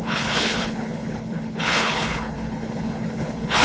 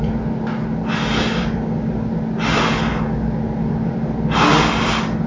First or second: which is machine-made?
first